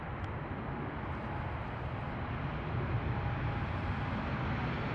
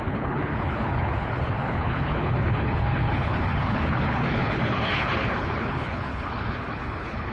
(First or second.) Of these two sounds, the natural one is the first